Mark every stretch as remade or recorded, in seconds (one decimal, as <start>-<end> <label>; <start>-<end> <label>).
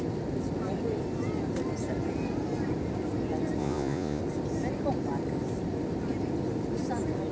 0.0-3.6 recorded; 3.6-4.2 remade; 4.2-7.3 recorded